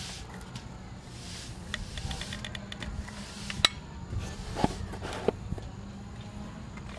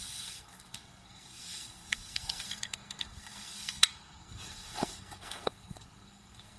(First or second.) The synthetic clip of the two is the second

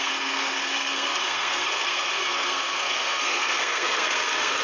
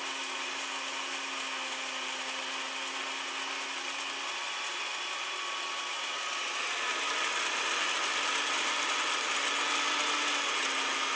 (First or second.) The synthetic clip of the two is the first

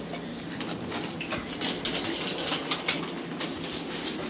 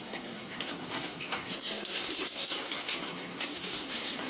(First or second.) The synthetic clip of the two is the second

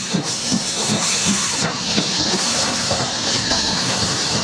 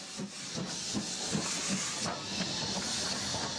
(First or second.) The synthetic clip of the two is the first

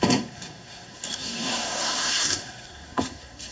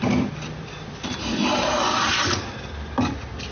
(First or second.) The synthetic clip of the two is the first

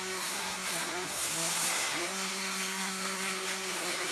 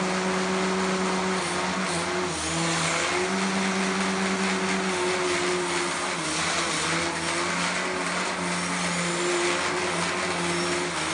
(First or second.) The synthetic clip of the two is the first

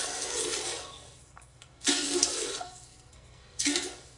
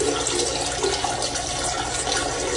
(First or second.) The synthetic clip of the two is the first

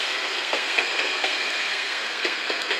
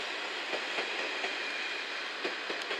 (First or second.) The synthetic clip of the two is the first